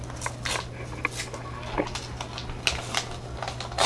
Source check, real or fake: real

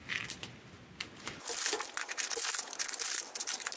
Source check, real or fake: real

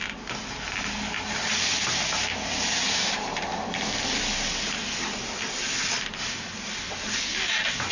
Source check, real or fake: real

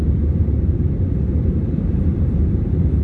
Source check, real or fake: fake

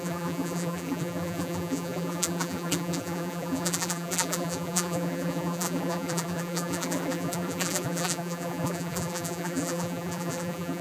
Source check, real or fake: fake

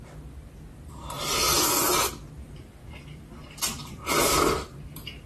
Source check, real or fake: real